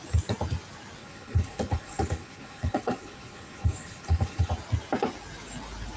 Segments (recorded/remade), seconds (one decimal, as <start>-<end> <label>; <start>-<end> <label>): 0.0-1.0 recorded; 1.0-4.5 remade; 4.5-6.0 recorded